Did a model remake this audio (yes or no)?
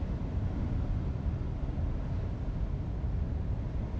no